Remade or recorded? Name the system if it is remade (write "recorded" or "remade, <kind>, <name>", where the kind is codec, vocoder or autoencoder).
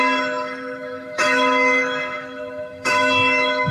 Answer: remade, autoencoder, DAC-VAE